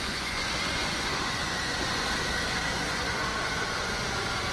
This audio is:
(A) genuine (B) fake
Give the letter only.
B